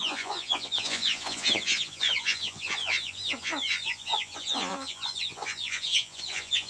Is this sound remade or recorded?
remade